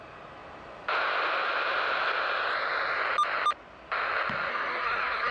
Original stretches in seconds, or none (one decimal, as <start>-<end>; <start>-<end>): 0.0-4.5